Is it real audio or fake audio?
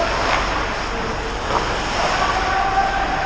real